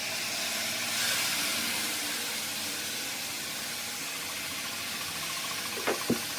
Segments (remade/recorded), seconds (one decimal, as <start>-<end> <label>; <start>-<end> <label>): 0.0-6.4 recorded